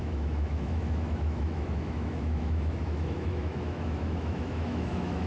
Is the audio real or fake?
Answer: fake